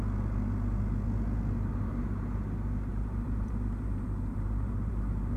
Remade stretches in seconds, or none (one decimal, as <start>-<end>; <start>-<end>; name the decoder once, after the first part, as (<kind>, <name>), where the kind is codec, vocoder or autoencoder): 2.9-4.9 (vocoder, BigVGAN v2)